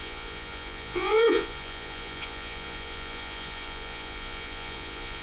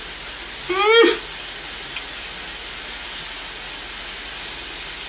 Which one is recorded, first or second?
second